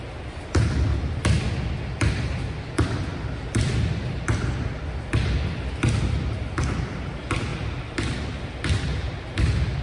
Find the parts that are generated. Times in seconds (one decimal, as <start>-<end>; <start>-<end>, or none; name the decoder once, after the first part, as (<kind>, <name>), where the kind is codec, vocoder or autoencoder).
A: none